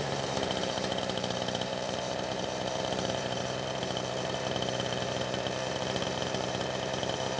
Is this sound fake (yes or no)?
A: yes